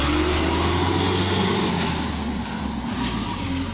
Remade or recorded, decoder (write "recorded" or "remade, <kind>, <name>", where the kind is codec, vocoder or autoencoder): recorded